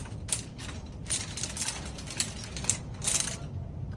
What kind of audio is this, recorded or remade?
recorded